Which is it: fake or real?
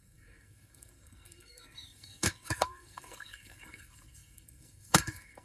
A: fake